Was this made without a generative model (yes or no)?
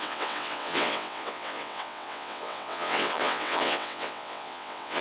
no